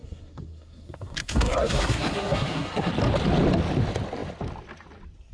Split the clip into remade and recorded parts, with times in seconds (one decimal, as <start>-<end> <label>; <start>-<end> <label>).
0.0-2.9 remade; 2.9-5.3 recorded